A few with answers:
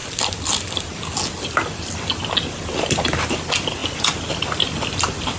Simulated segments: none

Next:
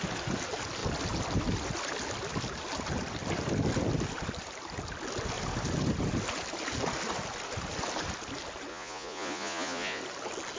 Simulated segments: 8.7-10.0 (vocoder, Vocos)

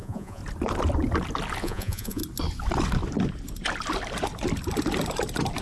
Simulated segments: 0.0-0.4 (vocoder, Vocos); 1.6-2.2

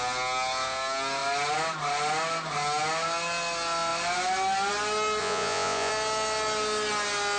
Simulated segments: 5.2-5.9 (vocoder, Vocos)